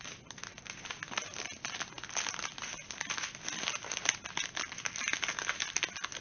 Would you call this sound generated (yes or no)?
no